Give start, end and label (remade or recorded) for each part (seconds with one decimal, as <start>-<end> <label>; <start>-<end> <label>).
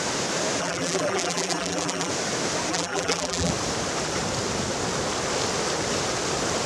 0.0-0.6 recorded; 0.6-2.1 remade; 2.1-2.7 recorded; 2.7-3.5 remade; 3.5-6.7 recorded